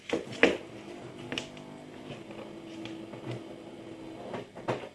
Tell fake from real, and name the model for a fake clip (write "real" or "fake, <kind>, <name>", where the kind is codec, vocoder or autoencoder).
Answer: real